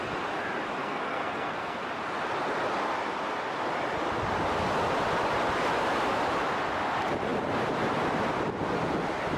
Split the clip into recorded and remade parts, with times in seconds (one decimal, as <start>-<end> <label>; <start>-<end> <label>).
0.0-0.8 recorded; 0.8-1.8 remade; 1.8-9.4 recorded